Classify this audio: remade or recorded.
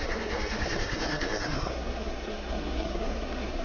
remade